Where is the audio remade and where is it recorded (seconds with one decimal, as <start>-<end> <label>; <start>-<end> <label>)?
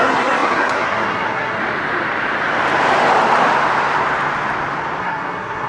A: 0.0-1.6 remade; 1.6-5.0 recorded; 5.0-5.7 remade